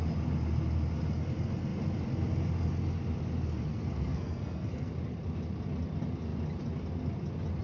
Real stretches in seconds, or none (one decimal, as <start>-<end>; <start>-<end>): 0.0-3.7; 4.9-7.6